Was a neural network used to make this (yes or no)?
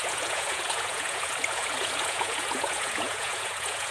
yes